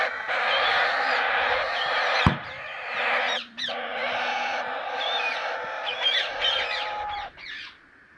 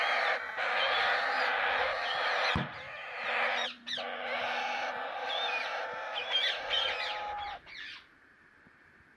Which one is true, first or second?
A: second